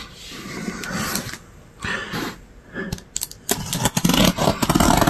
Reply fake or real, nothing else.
real